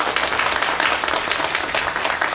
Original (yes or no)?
yes